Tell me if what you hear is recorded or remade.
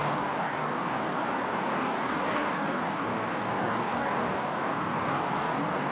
remade